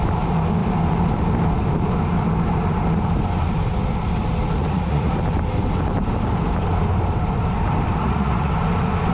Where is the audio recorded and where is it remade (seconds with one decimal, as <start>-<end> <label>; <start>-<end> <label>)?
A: 0.0-4.6 recorded; 4.6-5.1 remade; 5.1-8.0 recorded; 8.0-8.5 remade; 8.5-9.1 recorded